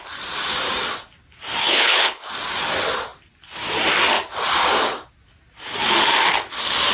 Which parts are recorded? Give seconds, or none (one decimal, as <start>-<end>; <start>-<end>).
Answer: 0.0-1.6; 2.3-6.9

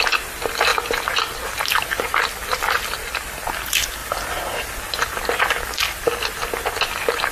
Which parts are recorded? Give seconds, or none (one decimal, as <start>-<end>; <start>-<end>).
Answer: 0.0-7.3

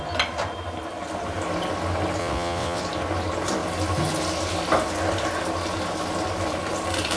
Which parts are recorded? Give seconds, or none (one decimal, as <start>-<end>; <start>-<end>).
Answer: 0.0-2.2; 2.8-7.2

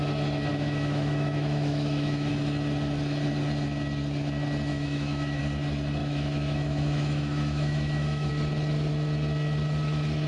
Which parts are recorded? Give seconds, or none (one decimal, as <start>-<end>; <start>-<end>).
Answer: 0.0-0.5; 2.3-4.7; 5.4-6.0; 8.3-10.3

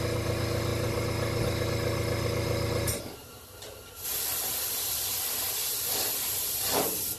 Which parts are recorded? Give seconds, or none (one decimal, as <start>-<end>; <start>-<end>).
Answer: 0.0-7.2